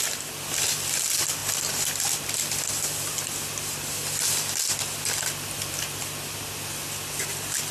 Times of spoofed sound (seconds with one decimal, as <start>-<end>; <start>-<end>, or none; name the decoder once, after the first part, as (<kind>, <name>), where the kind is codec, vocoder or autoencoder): none